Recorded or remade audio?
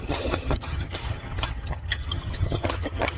remade